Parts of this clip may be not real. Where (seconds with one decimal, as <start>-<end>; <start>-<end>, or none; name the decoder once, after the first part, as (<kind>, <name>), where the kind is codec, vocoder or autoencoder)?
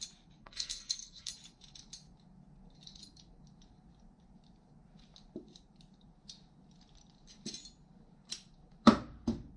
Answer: 0.4-1.3 (codec, SNAC)